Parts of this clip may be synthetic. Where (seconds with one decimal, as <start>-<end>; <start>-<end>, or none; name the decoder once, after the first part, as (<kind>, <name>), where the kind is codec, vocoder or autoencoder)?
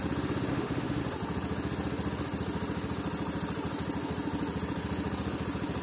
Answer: 0.5-1.0 (autoencoder, DAC-VAE)